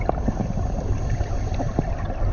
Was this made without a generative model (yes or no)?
yes